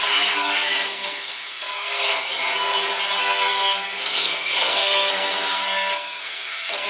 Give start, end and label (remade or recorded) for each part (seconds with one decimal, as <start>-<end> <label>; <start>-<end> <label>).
0.0-2.4 remade; 2.4-3.2 recorded; 3.2-6.9 remade